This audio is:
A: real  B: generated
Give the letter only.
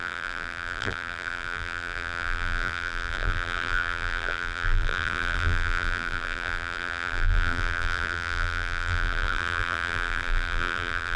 B